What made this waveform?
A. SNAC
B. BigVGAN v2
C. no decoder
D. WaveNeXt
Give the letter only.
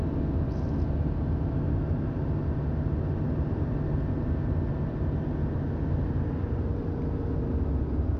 C